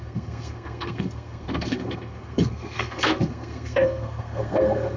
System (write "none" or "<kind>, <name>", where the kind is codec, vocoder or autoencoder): codec, SNAC